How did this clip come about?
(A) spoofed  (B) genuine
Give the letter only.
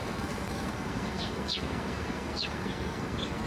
A